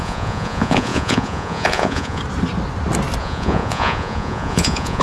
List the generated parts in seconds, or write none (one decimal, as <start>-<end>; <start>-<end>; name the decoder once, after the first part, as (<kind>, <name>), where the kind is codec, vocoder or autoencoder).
0.0-2.2 (vocoder, Vocos); 3.2-5.0